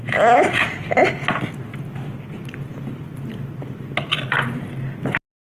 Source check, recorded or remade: recorded